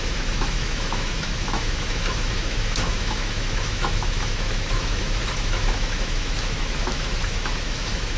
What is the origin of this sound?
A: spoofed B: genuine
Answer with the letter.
A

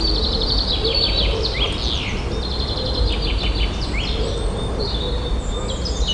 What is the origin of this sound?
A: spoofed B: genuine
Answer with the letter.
B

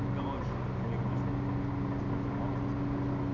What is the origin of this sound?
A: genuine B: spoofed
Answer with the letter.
A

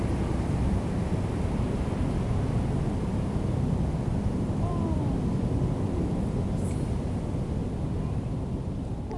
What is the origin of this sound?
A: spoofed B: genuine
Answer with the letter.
B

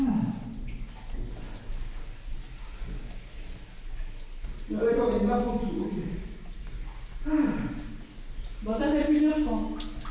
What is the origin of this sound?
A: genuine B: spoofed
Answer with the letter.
A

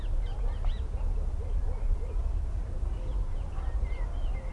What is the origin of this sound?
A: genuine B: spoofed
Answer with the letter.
A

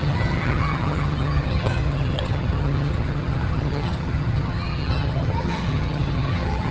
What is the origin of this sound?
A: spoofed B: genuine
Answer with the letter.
A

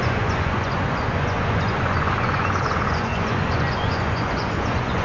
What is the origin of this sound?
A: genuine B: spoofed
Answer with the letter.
B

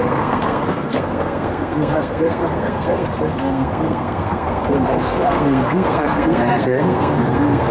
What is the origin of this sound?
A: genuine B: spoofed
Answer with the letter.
B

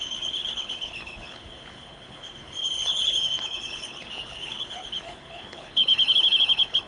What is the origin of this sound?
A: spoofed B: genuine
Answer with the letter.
A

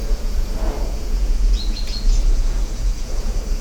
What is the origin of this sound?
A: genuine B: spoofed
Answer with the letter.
B